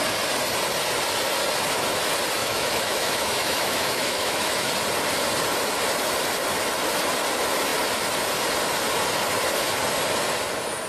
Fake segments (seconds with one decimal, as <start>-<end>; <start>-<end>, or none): 2.4-4.7